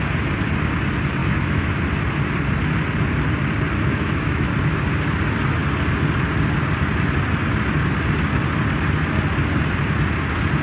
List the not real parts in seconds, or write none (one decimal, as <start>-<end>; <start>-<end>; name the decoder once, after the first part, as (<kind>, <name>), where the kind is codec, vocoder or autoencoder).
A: 1.2-1.8 (autoencoder, DAC-VAE); 3.9-4.5